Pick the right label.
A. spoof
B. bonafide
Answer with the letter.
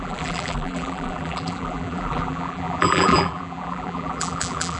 A